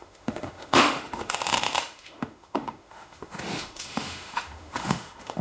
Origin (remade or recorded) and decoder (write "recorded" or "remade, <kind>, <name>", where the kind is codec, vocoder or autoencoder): remade, autoencoder, DAC-VAE